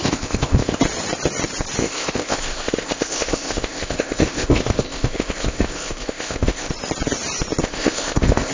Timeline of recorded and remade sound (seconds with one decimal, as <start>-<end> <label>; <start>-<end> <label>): 0.0-0.8 remade; 0.8-1.8 recorded; 1.8-6.7 remade; 6.7-7.6 recorded; 7.6-8.5 remade